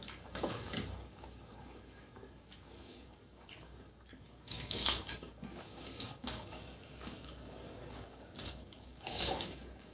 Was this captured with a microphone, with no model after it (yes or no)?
no